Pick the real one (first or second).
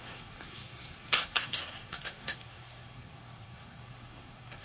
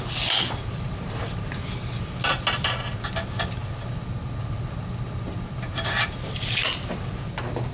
second